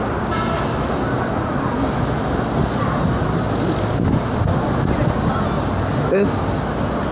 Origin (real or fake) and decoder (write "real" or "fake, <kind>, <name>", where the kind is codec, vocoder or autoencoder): real